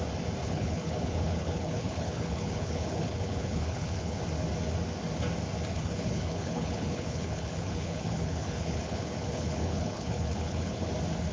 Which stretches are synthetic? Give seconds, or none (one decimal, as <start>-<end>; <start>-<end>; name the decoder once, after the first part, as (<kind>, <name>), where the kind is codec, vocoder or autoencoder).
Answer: 0.4-4.2 (codec, HILCodec); 5.7-10.9